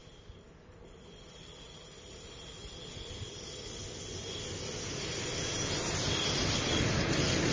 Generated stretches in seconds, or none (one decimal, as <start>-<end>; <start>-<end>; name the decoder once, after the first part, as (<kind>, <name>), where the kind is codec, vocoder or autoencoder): none